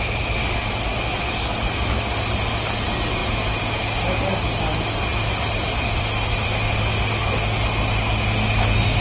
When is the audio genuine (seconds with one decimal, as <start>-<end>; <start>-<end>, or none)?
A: 0.0-3.2; 3.8-9.0